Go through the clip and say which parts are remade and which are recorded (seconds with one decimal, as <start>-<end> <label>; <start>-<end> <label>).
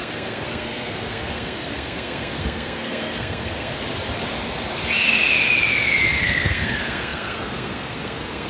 0.0-3.7 remade; 3.7-6.1 recorded; 6.1-8.5 remade